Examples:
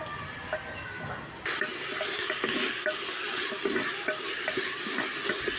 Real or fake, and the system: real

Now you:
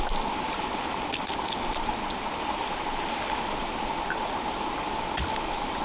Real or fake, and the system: real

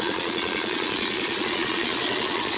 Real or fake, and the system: fake, vocoder, Vocos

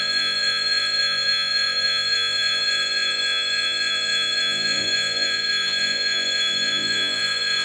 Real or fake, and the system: fake, vocoder, Vocos